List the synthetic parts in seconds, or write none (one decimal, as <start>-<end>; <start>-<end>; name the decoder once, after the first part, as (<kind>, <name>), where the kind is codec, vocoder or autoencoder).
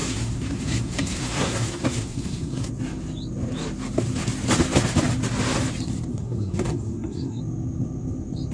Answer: 0.0-2.7 (codec, SNAC); 6.1-7.4